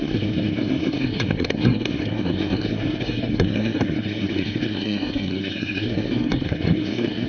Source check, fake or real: fake